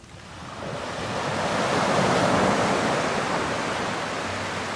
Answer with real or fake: real